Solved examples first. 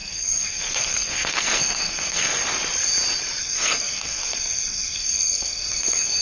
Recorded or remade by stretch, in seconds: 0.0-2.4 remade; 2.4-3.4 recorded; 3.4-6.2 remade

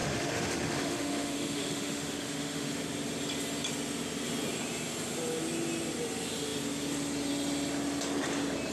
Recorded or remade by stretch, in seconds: 0.0-2.7 remade; 2.7-8.7 recorded

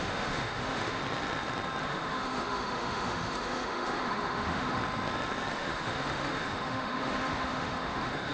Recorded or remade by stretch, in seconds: 0.0-1.0 remade; 1.0-1.8 recorded; 1.8-4.8 remade; 4.8-5.5 recorded; 5.5-8.3 remade

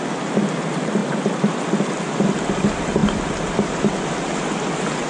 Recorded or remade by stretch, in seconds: 0.0-5.1 recorded

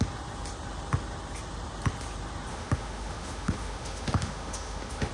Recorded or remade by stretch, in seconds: 0.0-2.5 recorded; 2.5-5.1 remade